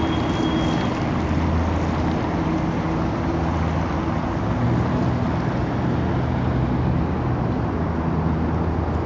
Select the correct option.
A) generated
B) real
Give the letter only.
B